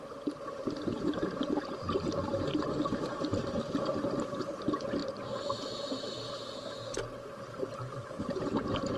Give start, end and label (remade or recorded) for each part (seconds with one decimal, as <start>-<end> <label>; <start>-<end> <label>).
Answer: 0.0-9.0 recorded